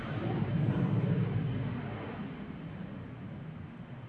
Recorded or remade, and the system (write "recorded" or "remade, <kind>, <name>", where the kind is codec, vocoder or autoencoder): recorded